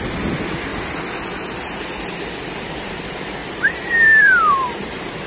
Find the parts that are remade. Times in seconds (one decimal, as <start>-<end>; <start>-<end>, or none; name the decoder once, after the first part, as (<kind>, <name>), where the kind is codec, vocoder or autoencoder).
3.4-5.3 (vocoder, BigVGAN v2)